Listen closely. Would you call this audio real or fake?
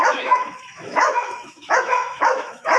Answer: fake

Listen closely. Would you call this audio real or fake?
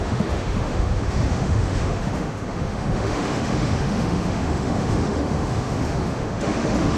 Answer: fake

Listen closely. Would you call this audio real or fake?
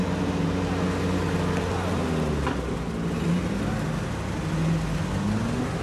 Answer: real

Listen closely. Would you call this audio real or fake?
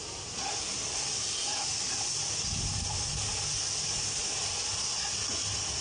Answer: real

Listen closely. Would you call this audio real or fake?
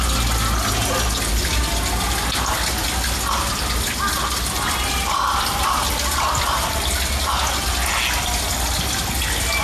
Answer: real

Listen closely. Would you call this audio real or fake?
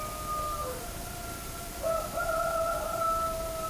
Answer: real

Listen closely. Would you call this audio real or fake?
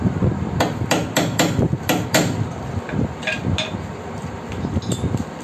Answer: real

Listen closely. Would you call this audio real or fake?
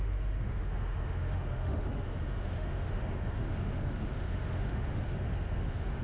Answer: fake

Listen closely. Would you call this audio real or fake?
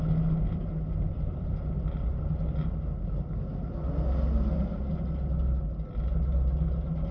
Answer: real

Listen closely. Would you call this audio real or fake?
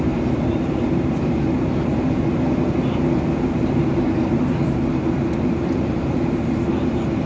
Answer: real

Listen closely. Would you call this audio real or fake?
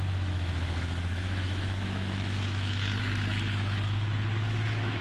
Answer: fake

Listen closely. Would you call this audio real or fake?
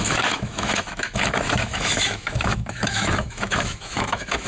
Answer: fake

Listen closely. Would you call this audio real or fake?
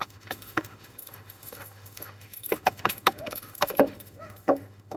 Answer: fake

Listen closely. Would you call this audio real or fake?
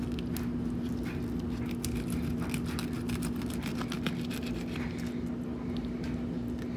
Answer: real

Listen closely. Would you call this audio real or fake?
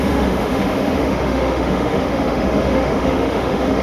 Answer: fake